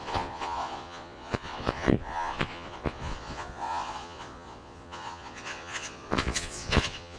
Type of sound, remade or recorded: remade